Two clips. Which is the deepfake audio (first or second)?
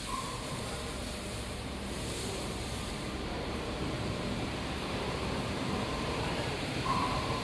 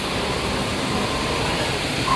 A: first